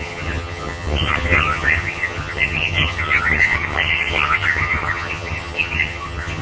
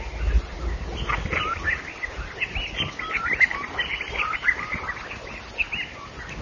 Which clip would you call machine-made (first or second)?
first